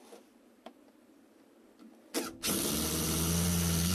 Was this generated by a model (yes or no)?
no